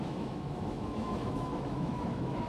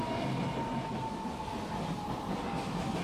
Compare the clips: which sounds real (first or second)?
second